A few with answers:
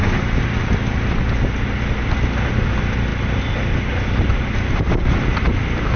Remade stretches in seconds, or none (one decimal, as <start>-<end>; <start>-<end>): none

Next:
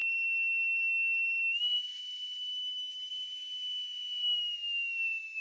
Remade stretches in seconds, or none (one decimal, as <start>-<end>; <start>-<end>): 0.0-3.1

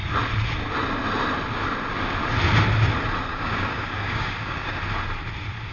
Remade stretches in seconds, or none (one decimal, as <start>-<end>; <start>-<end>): 3.3-4.8

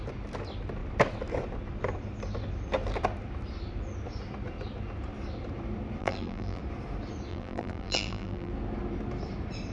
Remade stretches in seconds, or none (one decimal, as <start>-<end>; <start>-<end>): 6.0-6.6; 7.3-8.5

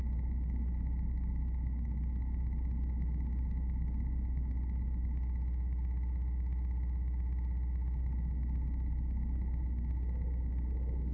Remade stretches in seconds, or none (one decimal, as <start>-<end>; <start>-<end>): none